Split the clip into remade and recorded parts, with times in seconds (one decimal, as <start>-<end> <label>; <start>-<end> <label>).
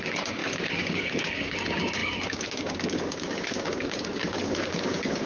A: 0.0-5.3 remade